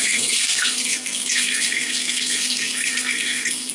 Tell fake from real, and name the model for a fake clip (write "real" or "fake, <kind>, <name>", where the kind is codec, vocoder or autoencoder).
fake, codec, SNAC